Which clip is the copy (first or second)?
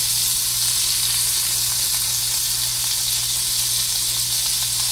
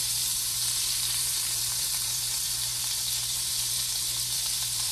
second